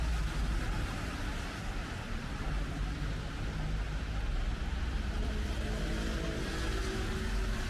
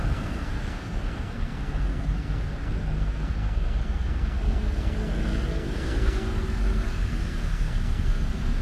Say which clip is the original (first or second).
first